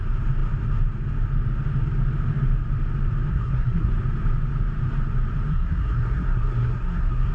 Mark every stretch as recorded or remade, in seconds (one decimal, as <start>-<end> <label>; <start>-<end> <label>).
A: 0.0-3.3 recorded; 3.3-3.9 remade; 3.9-5.5 recorded; 5.5-7.3 remade